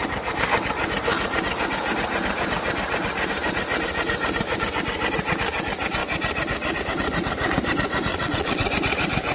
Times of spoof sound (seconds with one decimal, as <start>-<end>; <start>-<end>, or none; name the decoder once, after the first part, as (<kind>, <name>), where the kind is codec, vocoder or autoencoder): 8.1-8.7 (vocoder, WaveNeXt)